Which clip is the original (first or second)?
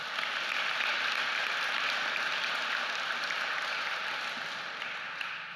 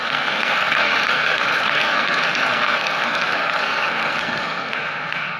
first